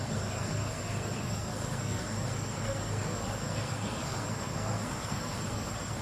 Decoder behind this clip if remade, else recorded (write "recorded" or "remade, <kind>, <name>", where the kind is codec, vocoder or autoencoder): remade, codec, SNAC